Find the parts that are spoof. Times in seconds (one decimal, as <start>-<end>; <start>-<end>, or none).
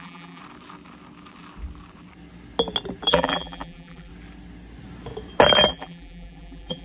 0.0-0.4; 3.1-4.1; 5.7-6.8